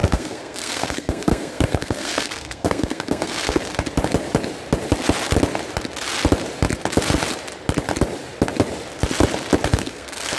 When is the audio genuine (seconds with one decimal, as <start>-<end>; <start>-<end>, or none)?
3.6-9.7